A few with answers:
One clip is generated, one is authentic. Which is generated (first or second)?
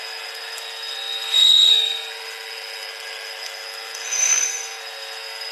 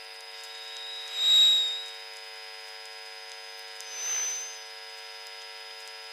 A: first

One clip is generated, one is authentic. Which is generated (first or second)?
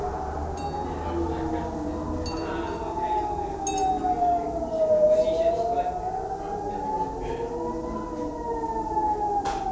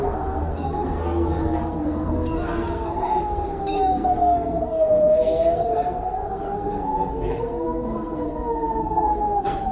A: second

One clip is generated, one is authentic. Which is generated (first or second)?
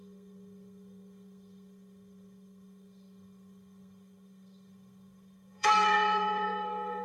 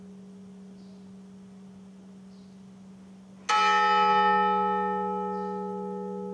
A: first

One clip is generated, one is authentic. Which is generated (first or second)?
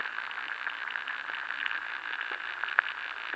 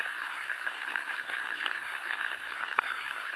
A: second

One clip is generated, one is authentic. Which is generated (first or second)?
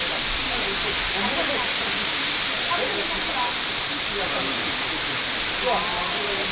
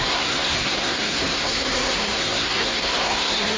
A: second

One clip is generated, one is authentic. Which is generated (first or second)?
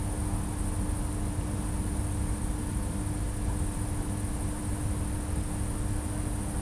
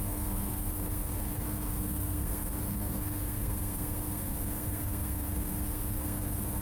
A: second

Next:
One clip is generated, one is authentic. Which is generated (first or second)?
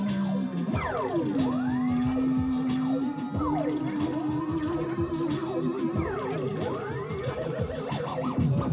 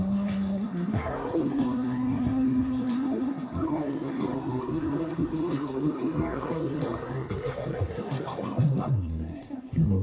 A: second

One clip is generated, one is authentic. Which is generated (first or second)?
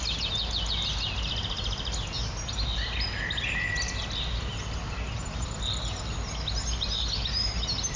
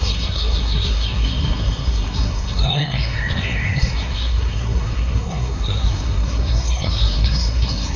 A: second